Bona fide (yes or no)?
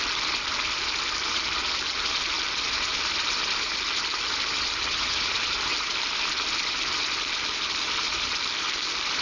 yes